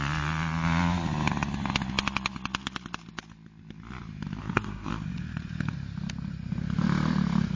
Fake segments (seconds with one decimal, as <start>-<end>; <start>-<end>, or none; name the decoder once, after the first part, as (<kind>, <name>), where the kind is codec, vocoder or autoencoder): 4.4-4.9 (codec, SNAC)